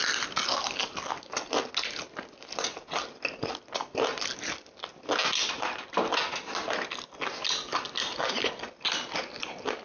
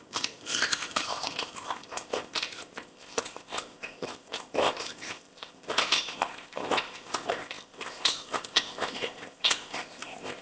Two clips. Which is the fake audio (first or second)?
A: second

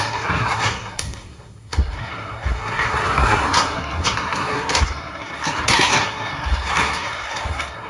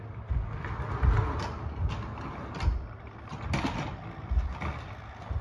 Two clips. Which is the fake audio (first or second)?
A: first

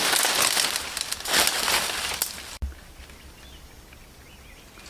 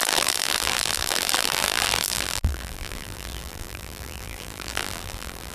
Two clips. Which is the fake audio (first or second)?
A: second